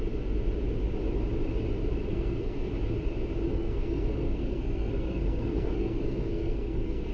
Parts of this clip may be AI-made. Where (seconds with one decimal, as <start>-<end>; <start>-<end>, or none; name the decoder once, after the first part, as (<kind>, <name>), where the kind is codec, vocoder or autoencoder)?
2.1-2.7 (codec, SNAC); 3.5-7.1